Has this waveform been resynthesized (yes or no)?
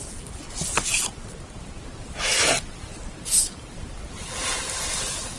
no